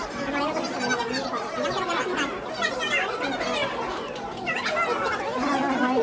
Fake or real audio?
real